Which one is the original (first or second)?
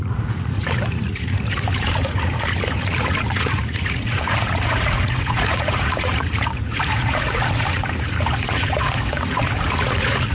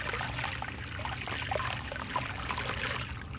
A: second